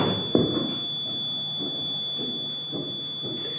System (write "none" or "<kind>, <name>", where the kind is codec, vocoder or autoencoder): none